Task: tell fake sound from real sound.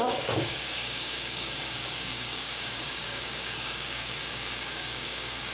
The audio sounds fake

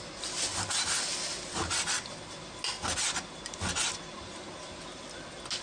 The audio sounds real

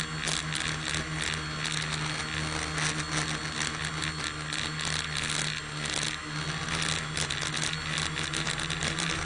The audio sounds real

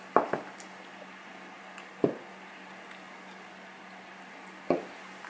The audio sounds real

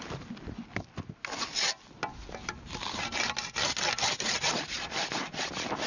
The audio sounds real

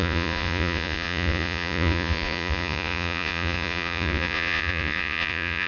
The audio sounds fake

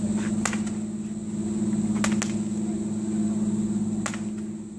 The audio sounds real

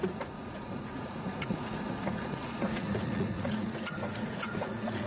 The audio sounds fake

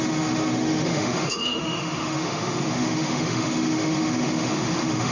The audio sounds fake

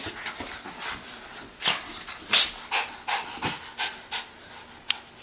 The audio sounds real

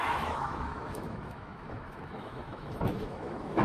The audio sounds fake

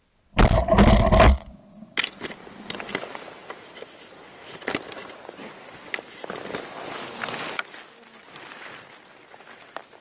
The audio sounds real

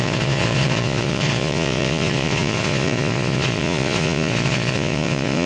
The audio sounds fake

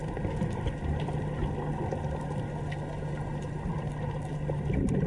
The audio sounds real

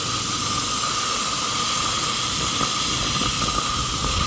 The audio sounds real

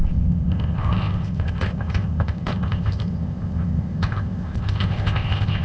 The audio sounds fake